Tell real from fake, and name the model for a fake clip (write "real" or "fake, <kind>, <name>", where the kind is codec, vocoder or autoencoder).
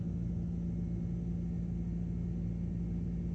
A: real